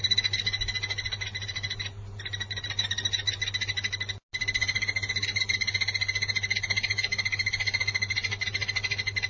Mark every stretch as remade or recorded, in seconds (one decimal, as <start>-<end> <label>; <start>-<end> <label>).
0.0-9.3 recorded